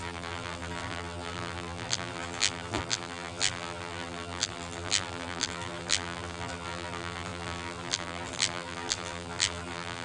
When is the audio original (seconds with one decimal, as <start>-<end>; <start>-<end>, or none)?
none